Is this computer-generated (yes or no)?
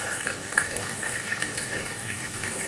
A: yes